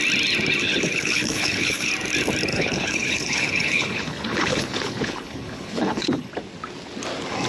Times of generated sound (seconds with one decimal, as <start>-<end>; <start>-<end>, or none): 0.6-1.9; 2.5-6.3